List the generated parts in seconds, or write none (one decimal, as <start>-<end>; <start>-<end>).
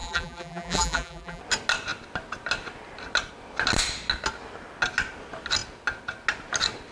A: 0.0-1.4